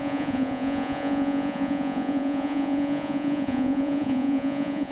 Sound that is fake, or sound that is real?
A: fake